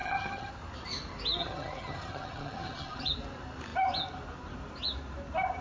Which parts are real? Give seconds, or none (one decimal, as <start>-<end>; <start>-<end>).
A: 0.5-1.4; 3.1-5.6